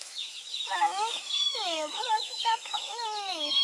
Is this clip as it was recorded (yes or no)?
no